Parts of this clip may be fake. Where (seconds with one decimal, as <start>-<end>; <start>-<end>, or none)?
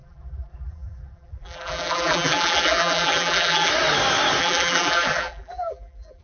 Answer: 0.0-3.7; 4.4-6.2